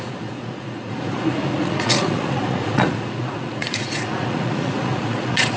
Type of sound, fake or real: fake